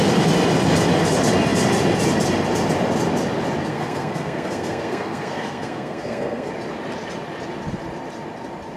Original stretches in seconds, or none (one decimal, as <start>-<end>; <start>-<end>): 0.0-3.7; 6.5-8.8